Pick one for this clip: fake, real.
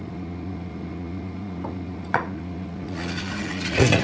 fake